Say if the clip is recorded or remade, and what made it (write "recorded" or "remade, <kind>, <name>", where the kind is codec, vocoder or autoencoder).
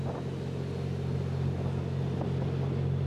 recorded